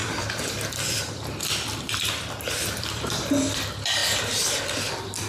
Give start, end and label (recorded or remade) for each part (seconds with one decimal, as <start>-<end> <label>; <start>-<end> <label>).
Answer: 0.0-4.0 remade; 4.0-4.5 recorded; 4.5-5.3 remade